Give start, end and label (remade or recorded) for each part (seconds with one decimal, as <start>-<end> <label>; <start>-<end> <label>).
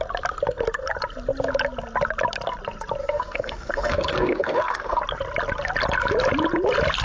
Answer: 0.0-3.0 recorded; 3.0-5.0 remade; 5.0-7.0 recorded